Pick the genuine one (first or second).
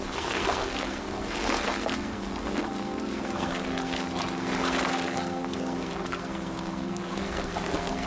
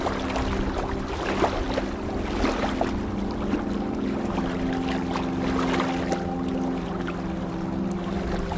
second